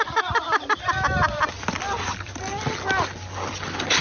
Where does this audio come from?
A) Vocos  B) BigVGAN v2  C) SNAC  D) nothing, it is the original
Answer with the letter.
D